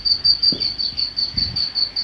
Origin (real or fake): fake